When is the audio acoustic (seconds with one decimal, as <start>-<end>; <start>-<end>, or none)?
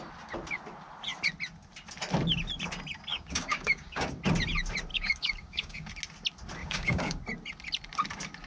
0.0-3.1; 4.1-4.9; 5.9-6.6; 7.2-8.5